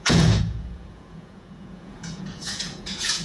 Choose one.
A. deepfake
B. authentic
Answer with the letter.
A